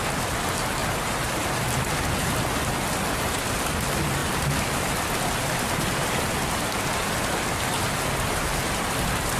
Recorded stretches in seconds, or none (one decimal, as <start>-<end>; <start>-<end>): 0.0-4.2; 6.2-9.4